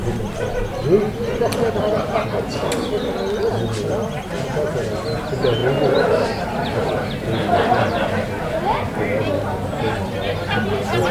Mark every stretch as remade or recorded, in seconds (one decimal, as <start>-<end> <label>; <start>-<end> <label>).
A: 0.0-5.6 recorded; 5.6-6.9 remade; 6.9-11.1 recorded

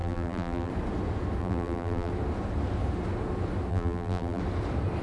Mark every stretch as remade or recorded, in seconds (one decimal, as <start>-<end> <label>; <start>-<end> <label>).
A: 0.0-0.7 remade; 0.7-1.4 recorded; 1.4-2.1 remade; 2.1-3.7 recorded; 3.7-4.4 remade; 4.4-5.0 recorded

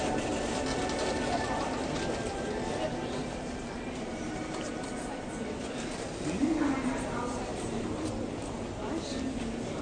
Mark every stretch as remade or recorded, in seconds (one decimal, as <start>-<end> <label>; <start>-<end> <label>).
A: 0.0-0.8 recorded; 0.8-1.6 remade; 1.6-3.2 recorded; 3.2-5.3 remade; 5.3-7.5 recorded; 7.5-8.1 remade; 8.1-9.8 recorded

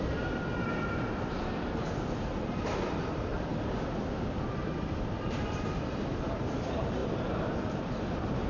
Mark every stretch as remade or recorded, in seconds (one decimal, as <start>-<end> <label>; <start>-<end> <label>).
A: 0.0-3.5 remade; 3.5-4.2 recorded; 4.2-8.5 remade